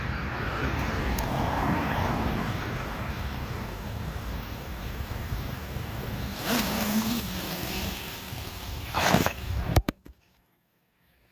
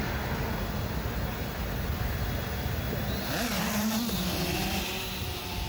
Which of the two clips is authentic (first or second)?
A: second